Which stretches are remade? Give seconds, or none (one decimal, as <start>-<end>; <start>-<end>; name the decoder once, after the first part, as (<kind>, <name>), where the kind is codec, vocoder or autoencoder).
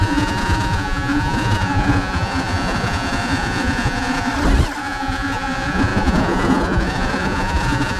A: 0.0-4.3 (vocoder, Vocos); 4.8-8.0